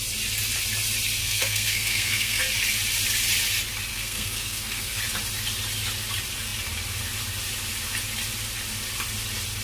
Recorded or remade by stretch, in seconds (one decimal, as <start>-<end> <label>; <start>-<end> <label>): 0.0-1.2 recorded; 1.2-2.4 remade; 2.4-3.9 recorded; 3.9-5.0 remade; 5.0-9.6 recorded